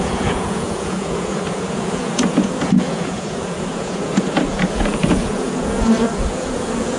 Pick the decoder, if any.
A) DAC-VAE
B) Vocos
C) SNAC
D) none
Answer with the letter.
B